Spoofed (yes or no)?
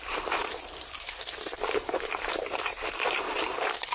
yes